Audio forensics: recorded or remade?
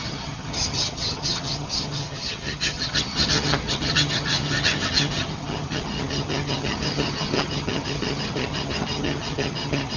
remade